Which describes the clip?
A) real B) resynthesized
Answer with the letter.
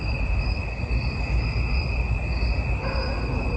A